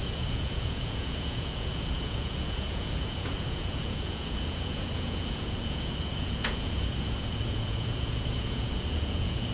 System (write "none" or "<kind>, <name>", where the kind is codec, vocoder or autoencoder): vocoder, Vocos